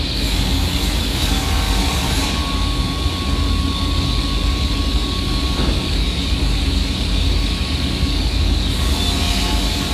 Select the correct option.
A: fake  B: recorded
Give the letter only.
A